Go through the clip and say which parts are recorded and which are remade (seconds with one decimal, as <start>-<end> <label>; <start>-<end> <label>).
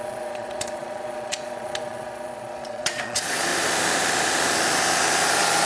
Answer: 0.0-3.5 remade; 3.5-5.7 recorded